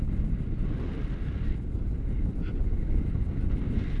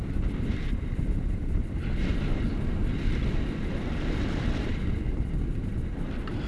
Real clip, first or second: first